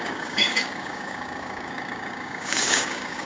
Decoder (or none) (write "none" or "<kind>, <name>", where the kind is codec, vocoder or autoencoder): codec, DAC